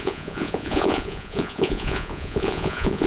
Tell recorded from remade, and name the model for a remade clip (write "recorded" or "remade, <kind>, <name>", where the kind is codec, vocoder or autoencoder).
remade, vocoder, Vocos